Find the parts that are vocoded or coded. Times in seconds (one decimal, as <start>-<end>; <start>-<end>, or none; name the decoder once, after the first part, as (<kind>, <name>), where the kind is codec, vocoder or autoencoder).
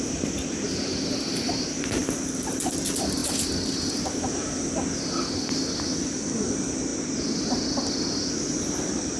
none